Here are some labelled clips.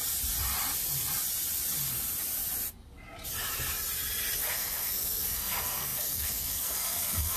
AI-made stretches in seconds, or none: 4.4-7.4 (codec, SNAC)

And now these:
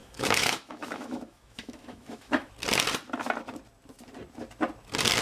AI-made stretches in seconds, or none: 0.0-2.5 (autoencoder, DAC-VAE)

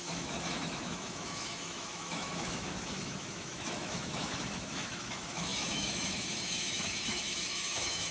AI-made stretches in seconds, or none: 0.0-8.1 (autoencoder, DAC-VAE)

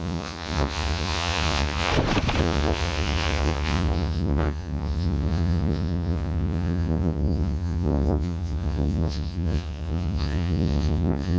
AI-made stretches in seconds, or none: 0.0-1.9 (vocoder, Vocos); 2.4-11.4

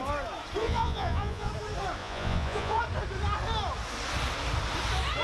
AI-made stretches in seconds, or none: 0.6-1.5 (vocoder, Vocos); 2.0-2.8

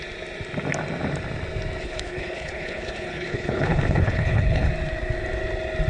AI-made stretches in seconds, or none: 1.8-4.7 (codec, HILCodec)

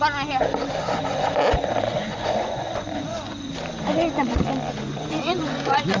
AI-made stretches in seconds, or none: 0.8-3.5 (vocoder, Vocos); 4.7-6.0